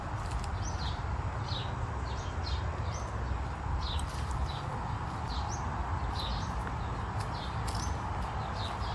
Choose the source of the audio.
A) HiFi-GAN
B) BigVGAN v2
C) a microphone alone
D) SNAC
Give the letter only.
C